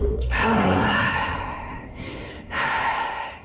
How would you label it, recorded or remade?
remade